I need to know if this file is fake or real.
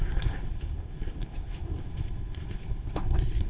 fake